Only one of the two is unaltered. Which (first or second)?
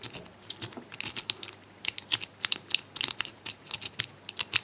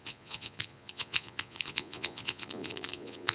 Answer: first